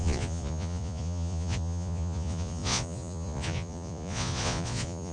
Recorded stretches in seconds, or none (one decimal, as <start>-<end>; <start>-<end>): none